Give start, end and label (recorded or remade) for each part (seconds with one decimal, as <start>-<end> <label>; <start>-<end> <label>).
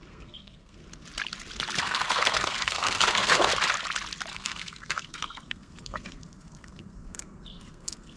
0.0-0.8 remade; 0.8-1.8 recorded; 1.8-3.5 remade; 3.5-4.3 recorded; 4.3-8.2 remade